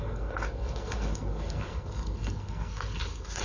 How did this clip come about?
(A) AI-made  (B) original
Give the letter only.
A